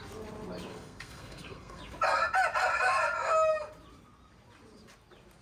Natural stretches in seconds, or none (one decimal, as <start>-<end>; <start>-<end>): 0.0-0.7; 1.8-5.4